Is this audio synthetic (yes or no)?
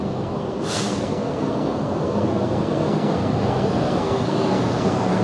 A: yes